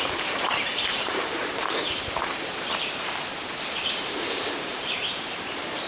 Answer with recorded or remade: remade